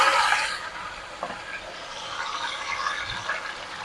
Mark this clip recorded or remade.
recorded